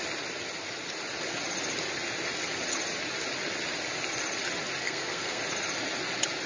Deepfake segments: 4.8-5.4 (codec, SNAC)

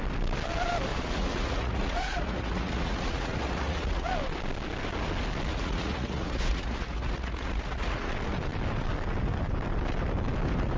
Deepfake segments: 0.9-4.1 (vocoder, Vocos); 5.5-8.1

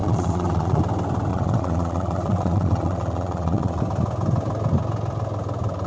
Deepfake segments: 0.0-0.8 (vocoder, Vocos); 1.3-3.8

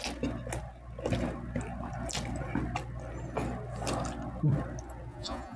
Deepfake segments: 5.1-5.6 (vocoder, Vocos)

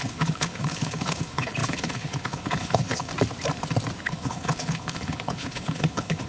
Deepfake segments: 0.0-3.1 (codec, HILCodec); 4.0-6.3

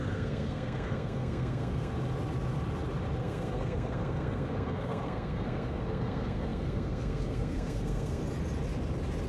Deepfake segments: 0.0-1.9 (codec, SNAC); 3.2-8.2